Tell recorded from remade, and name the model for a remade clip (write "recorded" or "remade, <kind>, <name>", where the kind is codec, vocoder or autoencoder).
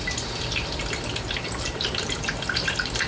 recorded